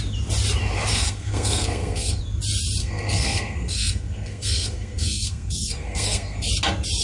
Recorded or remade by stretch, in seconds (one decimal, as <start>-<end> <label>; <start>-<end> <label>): 0.0-0.9 recorded; 0.9-2.2 remade; 2.2-2.8 recorded; 2.8-6.5 remade; 6.5-7.0 recorded